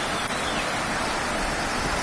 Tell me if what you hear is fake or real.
real